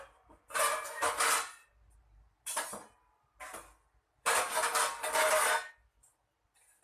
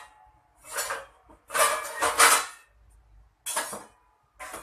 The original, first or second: second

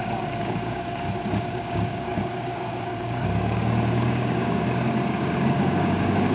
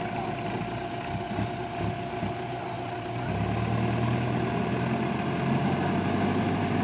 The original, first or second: second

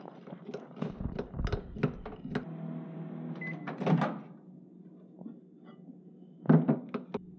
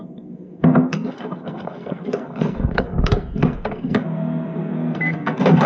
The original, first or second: first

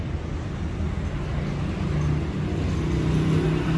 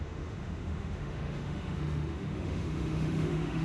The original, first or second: first